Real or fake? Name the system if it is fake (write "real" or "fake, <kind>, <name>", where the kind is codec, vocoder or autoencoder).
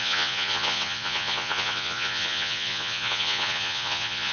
fake, vocoder, Vocos